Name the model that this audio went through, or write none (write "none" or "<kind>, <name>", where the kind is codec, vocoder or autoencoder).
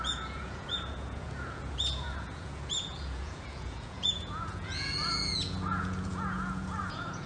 vocoder, Vocos